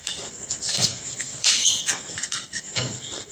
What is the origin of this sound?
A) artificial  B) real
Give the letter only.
A